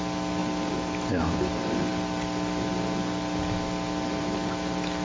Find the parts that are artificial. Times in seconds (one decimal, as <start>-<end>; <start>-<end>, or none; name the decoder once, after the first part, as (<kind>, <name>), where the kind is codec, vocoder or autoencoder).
none